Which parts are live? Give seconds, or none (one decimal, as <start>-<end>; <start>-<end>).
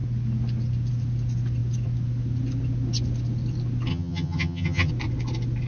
0.0-3.9; 4.9-5.7